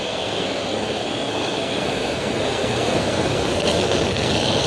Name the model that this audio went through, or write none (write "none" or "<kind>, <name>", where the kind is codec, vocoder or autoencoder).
codec, SNAC